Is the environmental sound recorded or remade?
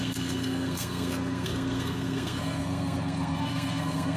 remade